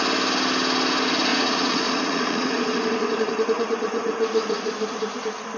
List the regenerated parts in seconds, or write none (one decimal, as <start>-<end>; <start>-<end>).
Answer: 1.3-4.7